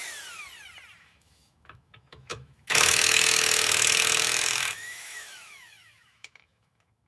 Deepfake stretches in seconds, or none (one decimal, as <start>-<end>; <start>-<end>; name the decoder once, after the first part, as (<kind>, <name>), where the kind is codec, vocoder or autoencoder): 1.0-7.1 (autoencoder, DAC-VAE)